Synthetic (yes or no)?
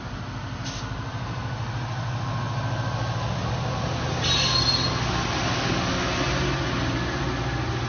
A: no